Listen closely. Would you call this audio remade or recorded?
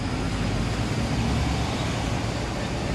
recorded